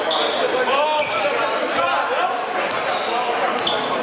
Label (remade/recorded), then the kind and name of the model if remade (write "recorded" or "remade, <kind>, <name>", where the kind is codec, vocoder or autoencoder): recorded